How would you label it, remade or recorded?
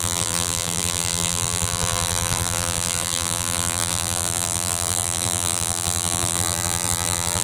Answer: remade